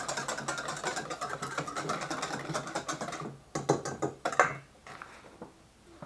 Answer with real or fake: real